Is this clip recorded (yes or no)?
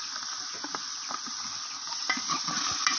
yes